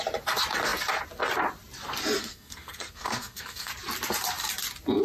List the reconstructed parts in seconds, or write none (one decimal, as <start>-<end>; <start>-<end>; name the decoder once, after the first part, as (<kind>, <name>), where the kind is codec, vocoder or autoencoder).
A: 2.2-3.7 (codec, SNAC)